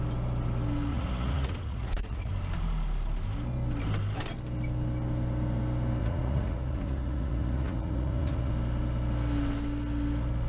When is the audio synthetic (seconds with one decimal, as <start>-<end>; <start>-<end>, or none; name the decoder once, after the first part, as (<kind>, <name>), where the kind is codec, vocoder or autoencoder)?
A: 0.9-2.3 (vocoder, Vocos); 6.0-8.5